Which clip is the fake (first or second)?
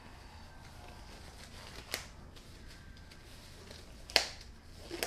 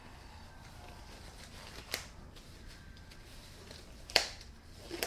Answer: second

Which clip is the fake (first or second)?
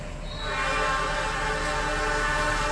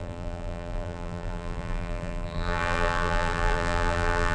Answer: second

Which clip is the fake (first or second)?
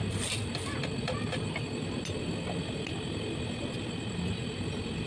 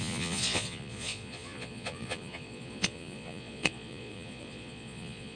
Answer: second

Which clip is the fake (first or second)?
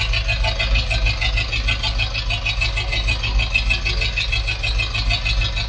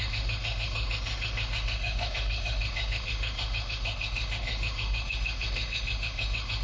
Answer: second